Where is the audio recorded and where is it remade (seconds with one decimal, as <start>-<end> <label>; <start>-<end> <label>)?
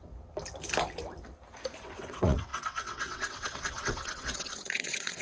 0.0-1.8 recorded; 1.8-5.2 remade